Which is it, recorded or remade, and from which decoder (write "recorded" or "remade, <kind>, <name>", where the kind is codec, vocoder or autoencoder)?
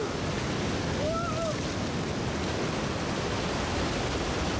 recorded